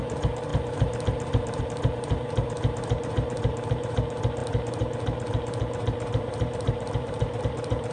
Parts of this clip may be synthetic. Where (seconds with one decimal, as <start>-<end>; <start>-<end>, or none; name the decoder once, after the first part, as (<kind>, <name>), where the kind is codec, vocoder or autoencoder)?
0.0-7.9 (vocoder, BigVGAN v2)